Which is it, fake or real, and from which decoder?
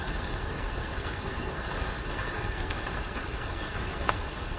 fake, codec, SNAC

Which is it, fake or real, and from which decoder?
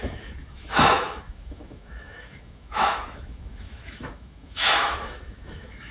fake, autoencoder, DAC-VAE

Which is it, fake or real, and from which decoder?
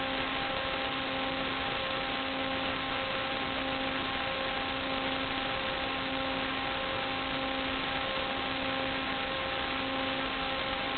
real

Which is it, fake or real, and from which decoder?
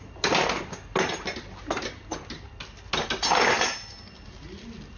real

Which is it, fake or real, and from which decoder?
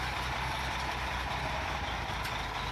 real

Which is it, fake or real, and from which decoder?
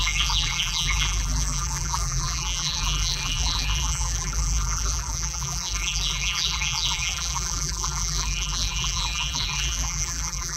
fake, vocoder, BigVGAN v2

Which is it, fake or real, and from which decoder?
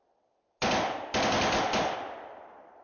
real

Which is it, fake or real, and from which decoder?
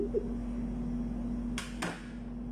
real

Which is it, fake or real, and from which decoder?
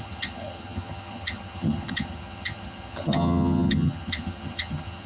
fake, vocoder, HiFi-GAN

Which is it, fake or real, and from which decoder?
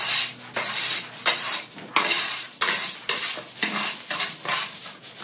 real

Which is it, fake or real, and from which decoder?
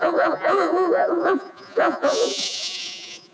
fake, vocoder, Vocos